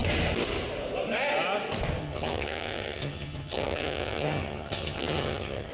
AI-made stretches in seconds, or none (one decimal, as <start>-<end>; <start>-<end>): 2.0-5.7